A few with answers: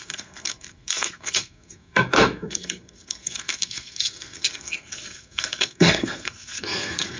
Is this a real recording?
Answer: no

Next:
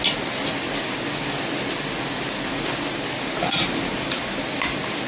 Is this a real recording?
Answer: yes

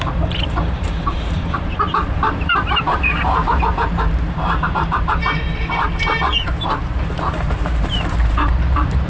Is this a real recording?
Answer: no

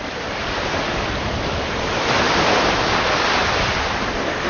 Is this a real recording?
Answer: no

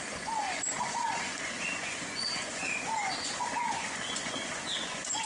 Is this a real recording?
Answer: no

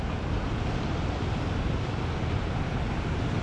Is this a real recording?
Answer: yes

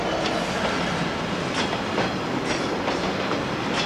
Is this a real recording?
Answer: yes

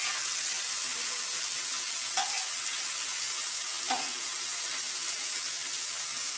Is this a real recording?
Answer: yes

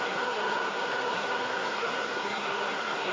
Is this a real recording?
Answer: no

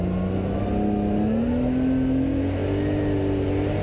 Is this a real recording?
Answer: yes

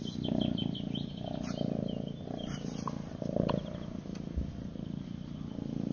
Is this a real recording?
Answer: yes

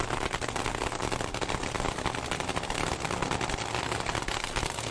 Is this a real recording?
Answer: yes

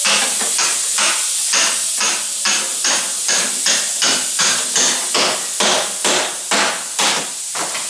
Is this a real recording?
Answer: yes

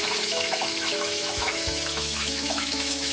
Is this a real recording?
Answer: no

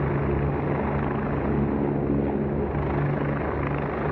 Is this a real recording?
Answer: yes